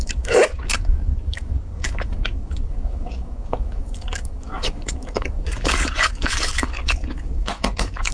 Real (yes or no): no